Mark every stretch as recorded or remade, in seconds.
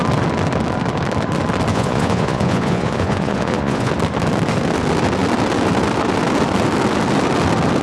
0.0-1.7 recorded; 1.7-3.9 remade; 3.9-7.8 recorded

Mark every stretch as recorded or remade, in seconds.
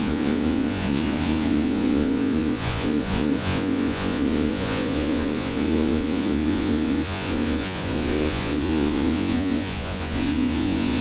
0.0-11.0 remade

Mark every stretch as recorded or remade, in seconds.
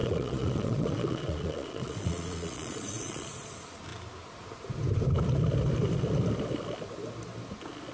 0.0-3.5 remade; 3.5-7.9 recorded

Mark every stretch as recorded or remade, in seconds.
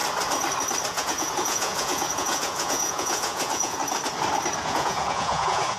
0.0-0.9 recorded; 0.9-3.8 remade; 3.8-4.6 recorded; 4.6-5.8 remade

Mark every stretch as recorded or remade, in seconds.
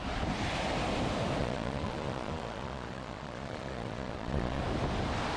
0.0-1.4 recorded; 1.4-4.6 remade; 4.6-5.4 recorded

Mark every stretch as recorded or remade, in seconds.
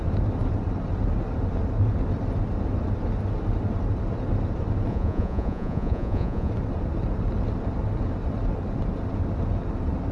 0.0-4.9 recorded; 4.9-6.5 remade; 6.5-10.1 recorded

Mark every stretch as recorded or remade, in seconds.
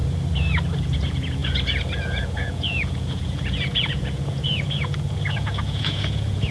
0.0-0.8 recorded; 0.8-6.5 remade